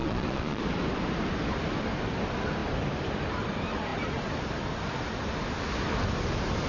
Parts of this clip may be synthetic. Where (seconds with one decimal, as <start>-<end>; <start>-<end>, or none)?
0.0-0.6